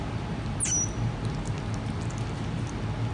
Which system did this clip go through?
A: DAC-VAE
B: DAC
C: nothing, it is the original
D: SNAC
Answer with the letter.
C